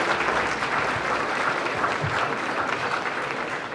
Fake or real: real